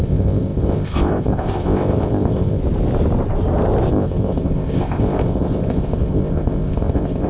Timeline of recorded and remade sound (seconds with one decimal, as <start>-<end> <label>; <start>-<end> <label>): 0.0-2.6 remade; 2.6-3.9 recorded; 3.9-7.3 remade